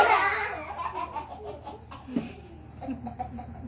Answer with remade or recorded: recorded